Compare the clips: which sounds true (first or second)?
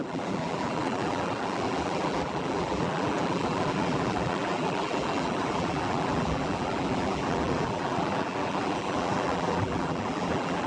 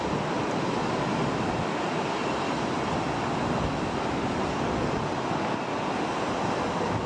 second